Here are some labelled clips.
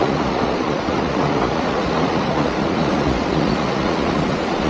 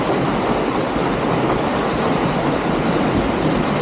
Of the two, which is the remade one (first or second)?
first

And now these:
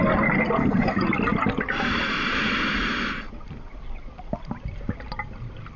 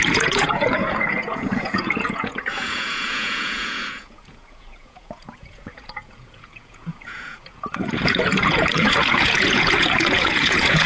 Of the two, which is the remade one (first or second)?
second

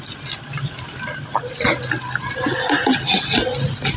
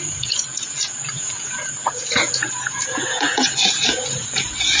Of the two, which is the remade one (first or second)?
second